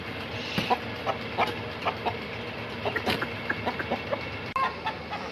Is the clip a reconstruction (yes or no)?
no